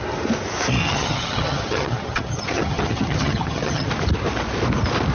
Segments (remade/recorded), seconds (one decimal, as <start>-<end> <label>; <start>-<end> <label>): 0.0-0.8 recorded; 0.8-3.9 remade; 3.9-5.1 recorded